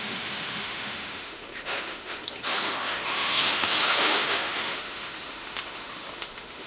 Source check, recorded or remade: remade